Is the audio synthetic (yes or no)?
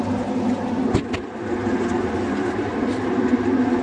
no